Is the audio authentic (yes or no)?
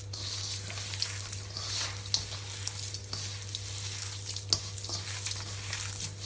yes